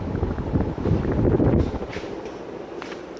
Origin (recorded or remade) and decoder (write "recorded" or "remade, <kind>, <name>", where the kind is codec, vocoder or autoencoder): remade, vocoder, BigVGAN v2